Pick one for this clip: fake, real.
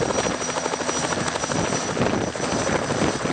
real